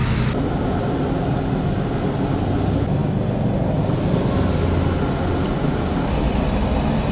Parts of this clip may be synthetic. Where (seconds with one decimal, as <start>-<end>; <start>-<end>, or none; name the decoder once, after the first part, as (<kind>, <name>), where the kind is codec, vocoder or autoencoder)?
none